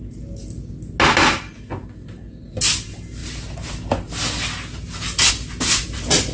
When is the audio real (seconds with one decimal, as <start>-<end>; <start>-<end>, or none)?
0.0-6.3